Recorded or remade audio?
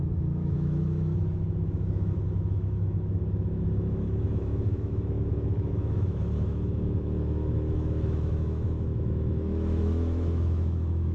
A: remade